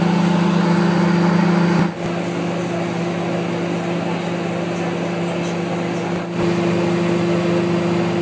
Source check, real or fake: real